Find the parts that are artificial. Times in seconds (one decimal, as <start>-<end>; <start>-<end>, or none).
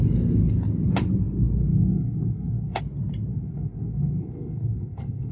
1.7-2.8; 3.3-5.3